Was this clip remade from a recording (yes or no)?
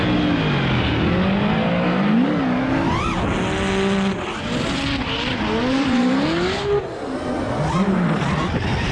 no